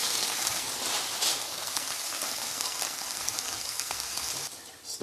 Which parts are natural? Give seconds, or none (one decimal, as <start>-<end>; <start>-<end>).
0.7-1.3; 4.3-5.0